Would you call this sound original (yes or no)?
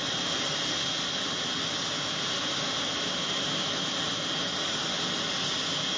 yes